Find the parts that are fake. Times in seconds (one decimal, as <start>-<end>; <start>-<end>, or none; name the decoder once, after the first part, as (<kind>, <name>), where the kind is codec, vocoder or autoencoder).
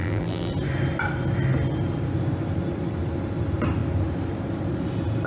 0.0-0.5 (vocoder, BigVGAN v2)